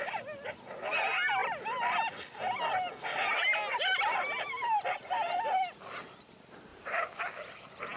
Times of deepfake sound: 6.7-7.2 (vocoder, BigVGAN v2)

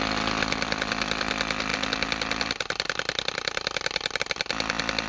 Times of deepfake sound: none

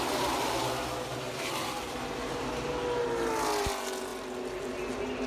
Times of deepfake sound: 1.1-2.4 (vocoder, BigVGAN v2)